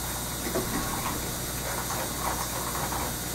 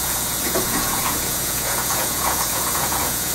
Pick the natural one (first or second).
first